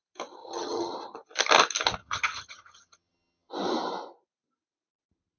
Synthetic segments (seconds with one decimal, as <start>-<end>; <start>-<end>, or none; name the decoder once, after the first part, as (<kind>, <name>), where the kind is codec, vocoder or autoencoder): 0.4-0.9 (vocoder, HiFi-GAN); 2.0-3.5